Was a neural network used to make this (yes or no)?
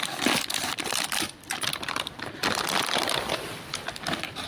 yes